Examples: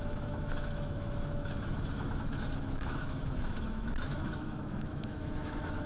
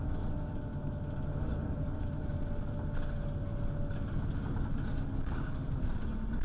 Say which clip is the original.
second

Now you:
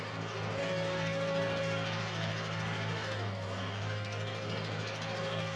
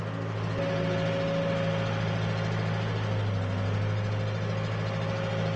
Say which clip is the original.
second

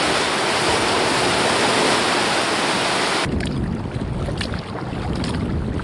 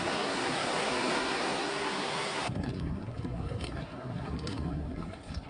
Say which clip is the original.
first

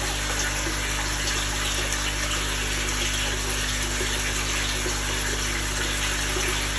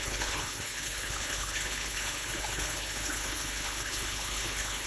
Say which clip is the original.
first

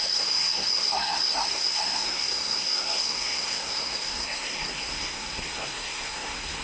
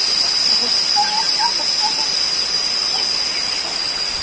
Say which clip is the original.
second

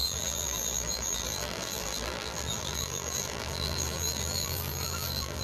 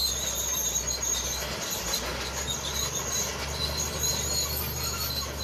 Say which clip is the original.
second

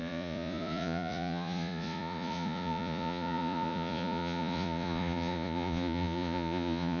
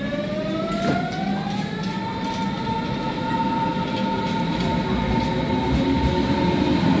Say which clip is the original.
second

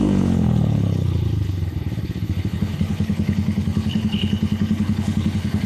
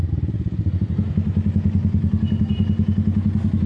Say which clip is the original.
second